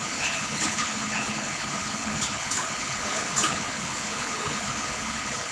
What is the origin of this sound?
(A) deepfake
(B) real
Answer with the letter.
A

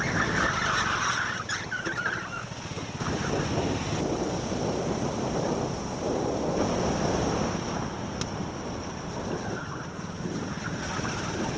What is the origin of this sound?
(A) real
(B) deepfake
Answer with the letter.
A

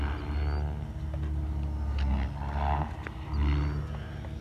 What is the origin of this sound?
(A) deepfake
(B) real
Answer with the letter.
B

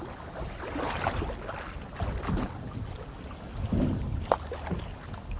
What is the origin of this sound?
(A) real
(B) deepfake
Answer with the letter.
A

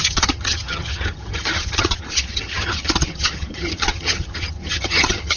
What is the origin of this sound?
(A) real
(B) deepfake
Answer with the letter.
B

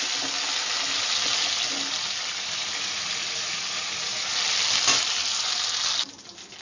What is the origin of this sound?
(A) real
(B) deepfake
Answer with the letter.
A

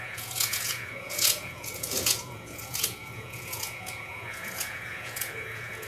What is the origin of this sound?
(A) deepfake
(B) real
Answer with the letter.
A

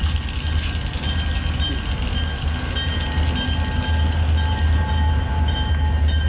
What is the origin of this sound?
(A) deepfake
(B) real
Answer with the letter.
B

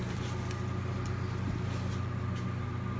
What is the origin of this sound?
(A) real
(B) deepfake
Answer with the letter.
A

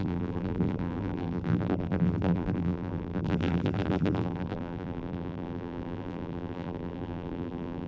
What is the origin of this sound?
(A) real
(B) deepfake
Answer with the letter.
B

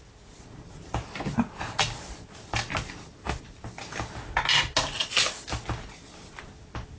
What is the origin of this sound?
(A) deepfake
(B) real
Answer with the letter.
B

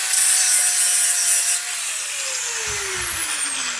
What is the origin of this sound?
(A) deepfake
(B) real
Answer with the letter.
B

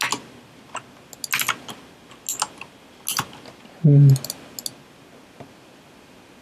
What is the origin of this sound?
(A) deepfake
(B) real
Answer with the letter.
B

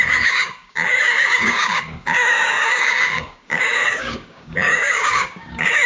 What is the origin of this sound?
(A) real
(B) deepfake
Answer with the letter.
B